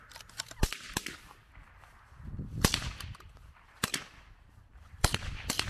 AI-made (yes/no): no